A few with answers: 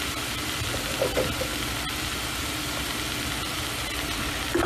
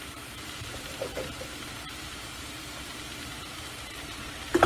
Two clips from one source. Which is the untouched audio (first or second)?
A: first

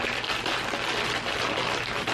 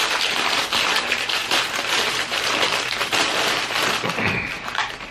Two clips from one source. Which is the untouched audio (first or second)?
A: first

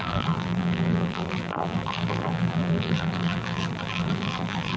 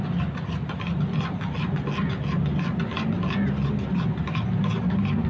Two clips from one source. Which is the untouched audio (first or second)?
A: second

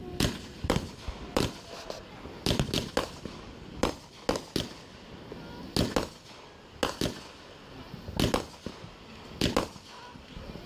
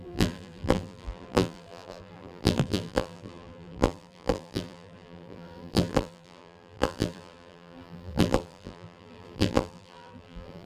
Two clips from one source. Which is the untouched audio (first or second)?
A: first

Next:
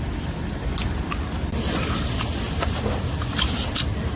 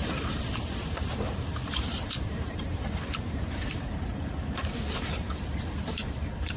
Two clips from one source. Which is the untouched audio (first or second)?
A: first